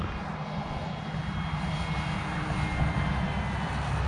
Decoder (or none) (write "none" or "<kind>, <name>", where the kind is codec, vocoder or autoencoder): none